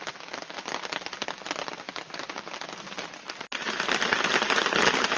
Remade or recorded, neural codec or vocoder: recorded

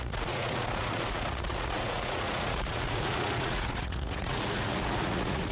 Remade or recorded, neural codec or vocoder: remade, vocoder, Vocos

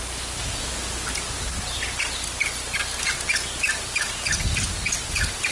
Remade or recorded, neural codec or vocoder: recorded